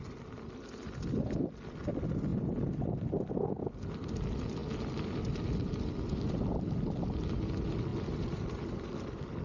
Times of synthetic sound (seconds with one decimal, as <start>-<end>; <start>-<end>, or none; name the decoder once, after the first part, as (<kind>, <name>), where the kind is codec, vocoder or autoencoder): none